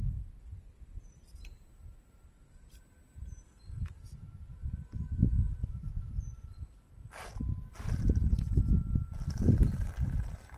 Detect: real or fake real